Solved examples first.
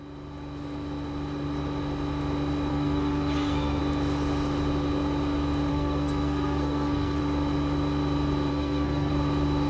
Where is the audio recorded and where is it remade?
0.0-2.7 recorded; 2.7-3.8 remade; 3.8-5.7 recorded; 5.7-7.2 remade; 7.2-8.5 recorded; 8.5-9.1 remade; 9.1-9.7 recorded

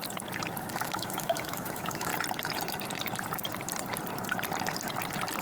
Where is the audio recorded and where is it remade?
0.0-0.7 recorded; 0.7-2.1 remade; 2.1-5.4 recorded

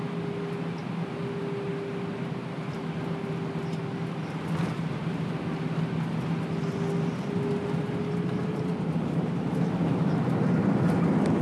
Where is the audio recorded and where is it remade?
0.0-8.4 recorded; 8.4-10.3 remade; 10.3-11.4 recorded

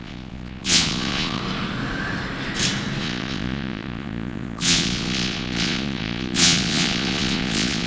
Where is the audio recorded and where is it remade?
0.0-1.4 remade; 1.4-3.0 recorded; 3.0-7.9 remade

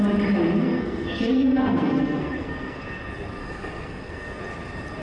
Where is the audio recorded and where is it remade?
0.0-0.6 recorded; 0.6-2.8 remade; 2.8-3.4 recorded; 3.4-4.4 remade; 4.4-5.0 recorded

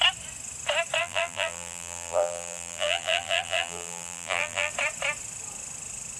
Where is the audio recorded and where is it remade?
0.0-1.0 recorded; 1.0-4.7 remade; 4.7-6.2 recorded

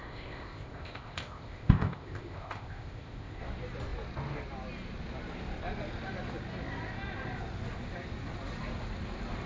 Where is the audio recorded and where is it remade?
0.0-3.4 remade; 3.4-9.5 recorded

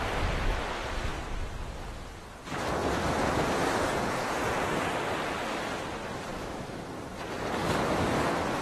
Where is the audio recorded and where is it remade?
0.0-2.8 recorded; 2.8-4.9 remade; 4.9-8.6 recorded